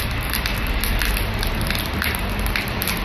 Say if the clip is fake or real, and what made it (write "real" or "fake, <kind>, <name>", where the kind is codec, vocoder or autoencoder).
real